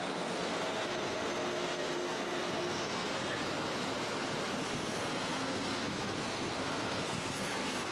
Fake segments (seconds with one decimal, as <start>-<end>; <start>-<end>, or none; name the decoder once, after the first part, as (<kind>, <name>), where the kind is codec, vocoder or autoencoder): 0.0-3.4 (codec, SNAC); 4.7-7.9